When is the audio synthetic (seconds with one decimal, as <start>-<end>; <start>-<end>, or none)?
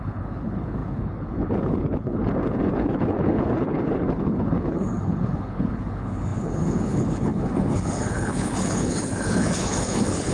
0.0-10.3